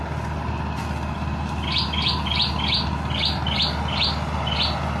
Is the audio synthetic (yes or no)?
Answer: no